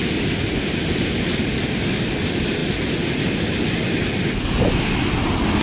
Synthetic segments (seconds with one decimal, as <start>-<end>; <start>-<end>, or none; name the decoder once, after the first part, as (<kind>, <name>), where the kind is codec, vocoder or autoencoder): none